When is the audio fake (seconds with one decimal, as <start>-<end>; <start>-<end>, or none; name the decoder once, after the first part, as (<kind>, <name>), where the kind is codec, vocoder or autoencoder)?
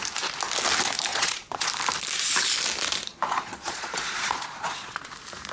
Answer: 1.1-1.7 (vocoder, Vocos); 3.1-5.1